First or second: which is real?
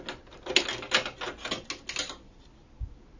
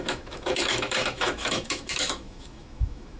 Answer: first